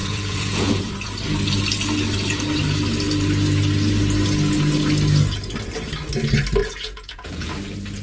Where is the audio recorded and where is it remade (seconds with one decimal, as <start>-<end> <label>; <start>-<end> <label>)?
0.0-0.9 remade; 0.9-6.6 recorded; 6.6-7.5 remade; 7.5-8.0 recorded